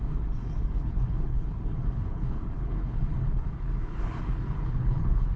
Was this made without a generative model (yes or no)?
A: no